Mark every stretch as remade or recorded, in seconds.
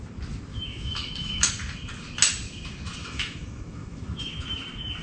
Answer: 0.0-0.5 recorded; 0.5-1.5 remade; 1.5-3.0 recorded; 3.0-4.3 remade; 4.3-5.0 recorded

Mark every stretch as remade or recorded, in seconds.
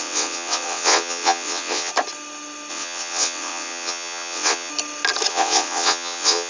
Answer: 0.0-1.9 remade; 1.9-2.7 recorded; 2.7-4.7 remade; 4.7-5.3 recorded; 5.3-6.5 remade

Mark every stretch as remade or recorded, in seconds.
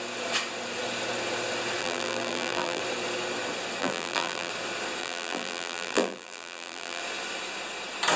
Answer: 0.0-1.8 recorded; 1.8-2.8 remade; 2.8-3.8 recorded; 3.8-4.5 remade; 4.5-5.0 recorded; 5.0-7.0 remade; 7.0-8.2 recorded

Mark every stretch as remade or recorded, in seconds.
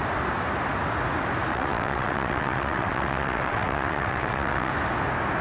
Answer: 0.0-1.5 recorded; 1.5-4.7 remade; 4.7-5.4 recorded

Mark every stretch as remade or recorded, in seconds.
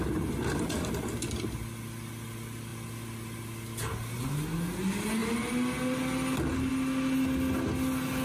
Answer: 0.0-8.2 recorded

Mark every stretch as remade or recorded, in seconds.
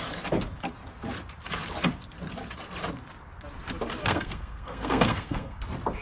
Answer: 0.0-4.0 recorded; 4.0-5.6 remade; 5.6-6.0 recorded